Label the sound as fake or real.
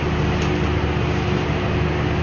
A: real